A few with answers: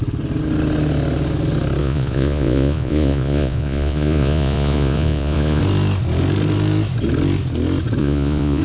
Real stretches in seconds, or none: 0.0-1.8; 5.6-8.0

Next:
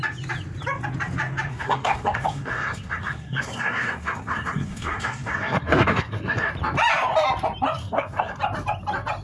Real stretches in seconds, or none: 0.0-1.5; 6.5-7.8; 8.4-9.2